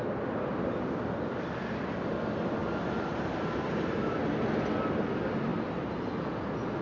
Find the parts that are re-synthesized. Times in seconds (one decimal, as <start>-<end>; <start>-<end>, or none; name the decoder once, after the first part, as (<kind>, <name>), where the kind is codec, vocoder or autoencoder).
2.8-4.2 (vocoder, BigVGAN v2)